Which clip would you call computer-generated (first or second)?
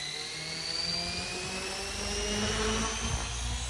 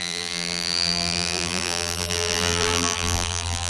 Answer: second